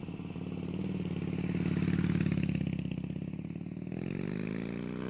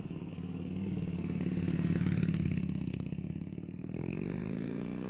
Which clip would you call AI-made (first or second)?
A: second